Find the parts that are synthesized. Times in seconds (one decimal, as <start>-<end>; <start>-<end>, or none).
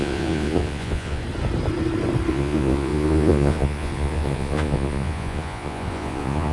0.0-1.2; 2.3-6.5